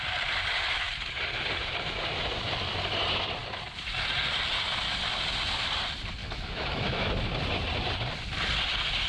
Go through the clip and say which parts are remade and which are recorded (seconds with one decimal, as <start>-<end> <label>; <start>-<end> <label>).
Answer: 0.0-6.2 recorded; 6.2-7.2 remade; 7.2-9.1 recorded